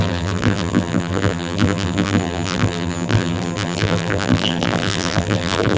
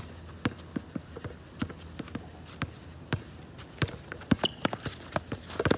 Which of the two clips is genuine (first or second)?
second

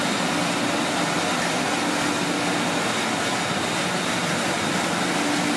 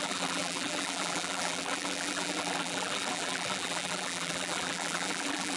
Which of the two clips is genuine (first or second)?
first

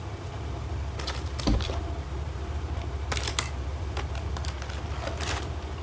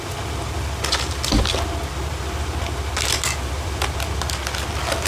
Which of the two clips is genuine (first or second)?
second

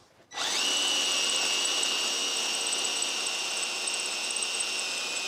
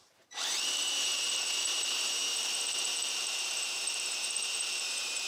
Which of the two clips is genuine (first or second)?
first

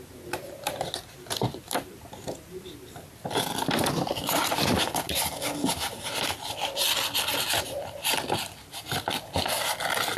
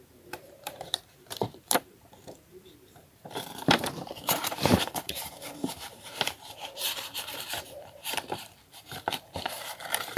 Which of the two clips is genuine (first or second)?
first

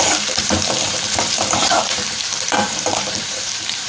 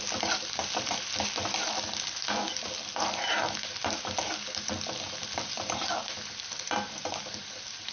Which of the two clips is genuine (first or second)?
second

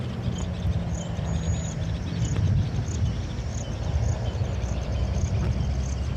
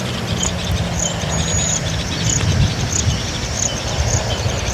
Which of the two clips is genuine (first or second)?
first